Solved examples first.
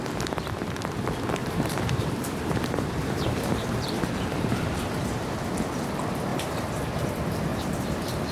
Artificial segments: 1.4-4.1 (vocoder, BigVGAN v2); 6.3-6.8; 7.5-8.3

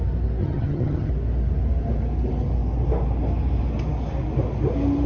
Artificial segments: 0.4-1.1 (vocoder, HiFi-GAN)

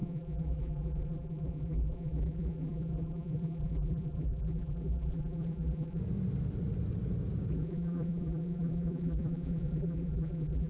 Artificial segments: 0.0-6.0 (vocoder, BigVGAN v2); 7.5-10.7

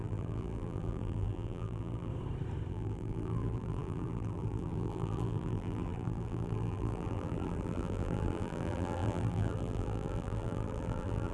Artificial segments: 0.0-2.1 (vocoder, BigVGAN v2); 2.7-11.3